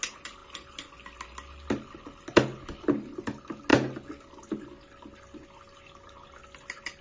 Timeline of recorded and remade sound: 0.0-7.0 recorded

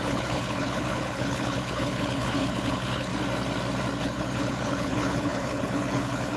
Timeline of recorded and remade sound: 0.0-3.1 remade; 3.1-4.0 recorded; 4.0-6.4 remade